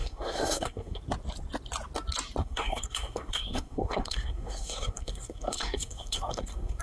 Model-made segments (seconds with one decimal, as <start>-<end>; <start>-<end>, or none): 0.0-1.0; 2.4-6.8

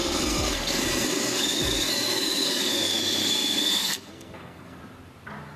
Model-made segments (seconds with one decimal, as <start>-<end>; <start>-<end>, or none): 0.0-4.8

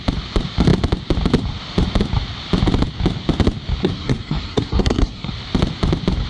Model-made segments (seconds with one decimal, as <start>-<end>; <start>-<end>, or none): 3.8-5.3